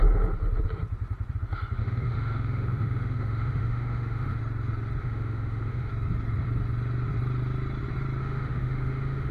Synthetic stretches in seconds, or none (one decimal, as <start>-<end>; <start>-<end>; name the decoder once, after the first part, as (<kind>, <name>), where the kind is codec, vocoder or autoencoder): 1.8-4.4 (autoencoder, DAC-VAE); 5.0-5.9; 8.2-9.3